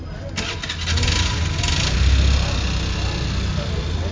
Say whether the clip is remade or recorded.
recorded